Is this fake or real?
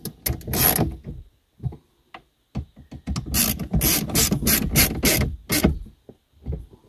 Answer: real